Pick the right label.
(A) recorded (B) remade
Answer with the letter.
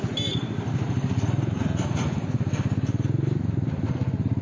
A